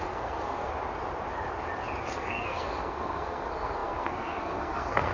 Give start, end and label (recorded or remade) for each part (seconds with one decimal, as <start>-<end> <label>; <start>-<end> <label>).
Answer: 0.0-0.7 remade; 0.7-2.0 recorded; 2.0-5.1 remade

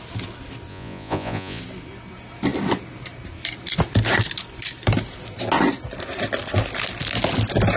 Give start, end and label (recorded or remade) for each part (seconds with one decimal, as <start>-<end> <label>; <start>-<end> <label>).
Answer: 0.0-0.7 recorded; 0.7-1.6 remade; 1.6-7.8 recorded

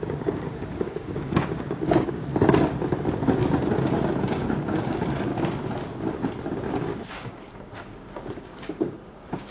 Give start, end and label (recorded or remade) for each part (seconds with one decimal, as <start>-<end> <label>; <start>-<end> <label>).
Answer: 0.0-2.3 remade; 2.3-4.2 recorded; 4.2-5.3 remade; 5.3-6.7 recorded; 6.7-9.5 remade

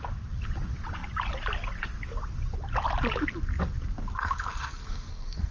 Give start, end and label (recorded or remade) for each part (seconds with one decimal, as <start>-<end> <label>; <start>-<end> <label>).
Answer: 0.0-4.2 recorded; 4.2-5.5 remade

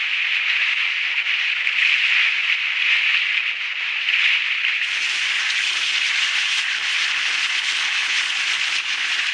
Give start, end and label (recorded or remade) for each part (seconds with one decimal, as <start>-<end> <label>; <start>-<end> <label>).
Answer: 0.0-9.3 recorded

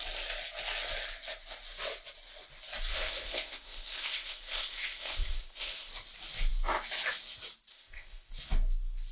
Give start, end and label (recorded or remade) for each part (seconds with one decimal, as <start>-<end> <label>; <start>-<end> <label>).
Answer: 0.0-2.9 recorded; 2.9-5.9 remade; 5.9-7.7 recorded; 7.7-8.3 remade; 8.3-9.1 recorded

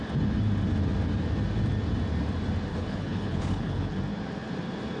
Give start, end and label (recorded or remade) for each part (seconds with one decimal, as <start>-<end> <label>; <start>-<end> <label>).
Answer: 0.0-2.7 recorded; 2.7-4.0 remade; 4.0-5.0 recorded

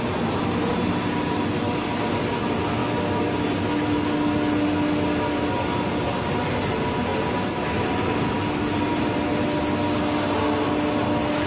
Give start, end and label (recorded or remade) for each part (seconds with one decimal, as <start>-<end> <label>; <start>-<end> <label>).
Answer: 0.0-11.5 recorded